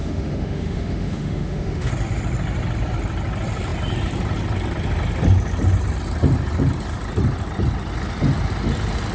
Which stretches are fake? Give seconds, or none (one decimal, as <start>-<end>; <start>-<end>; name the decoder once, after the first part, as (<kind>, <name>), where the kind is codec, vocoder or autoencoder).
0.0-1.9 (autoencoder, DAC-VAE)